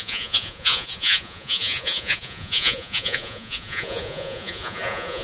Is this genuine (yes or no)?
no